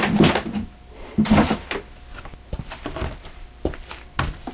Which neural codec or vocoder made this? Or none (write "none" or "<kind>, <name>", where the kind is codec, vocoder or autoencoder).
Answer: none